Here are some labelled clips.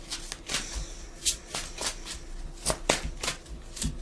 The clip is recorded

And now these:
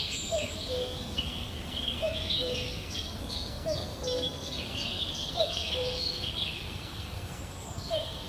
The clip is remade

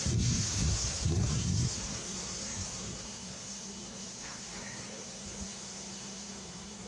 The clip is remade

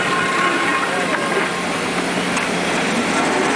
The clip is recorded